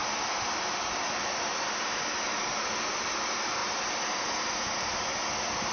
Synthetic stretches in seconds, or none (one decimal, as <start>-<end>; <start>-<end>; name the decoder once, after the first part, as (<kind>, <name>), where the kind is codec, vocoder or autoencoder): none